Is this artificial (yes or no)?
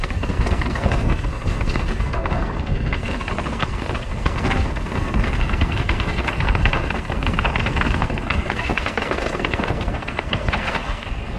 yes